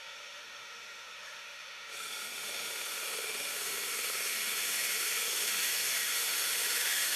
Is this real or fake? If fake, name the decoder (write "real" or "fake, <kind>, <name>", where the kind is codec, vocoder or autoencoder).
fake, autoencoder, DAC-VAE